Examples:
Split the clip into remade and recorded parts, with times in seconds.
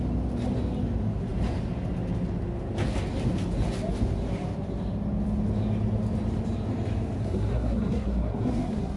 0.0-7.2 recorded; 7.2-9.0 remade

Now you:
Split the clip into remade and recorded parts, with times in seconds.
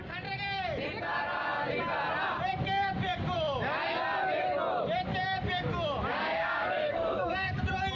0.0-6.2 recorded; 6.2-7.6 remade; 7.6-8.0 recorded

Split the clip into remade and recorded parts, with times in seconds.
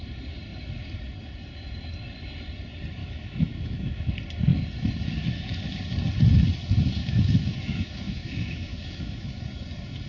0.0-3.0 recorded; 3.0-4.1 remade; 4.1-7.0 recorded; 7.0-9.4 remade; 9.4-10.1 recorded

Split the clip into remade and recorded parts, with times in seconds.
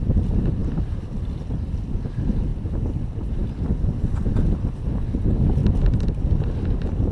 0.0-3.4 recorded; 3.4-4.2 remade; 4.2-7.1 recorded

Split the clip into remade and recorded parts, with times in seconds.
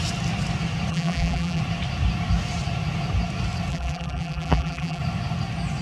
0.0-0.9 recorded; 0.9-1.6 remade; 1.6-3.7 recorded; 3.7-5.0 remade; 5.0-5.8 recorded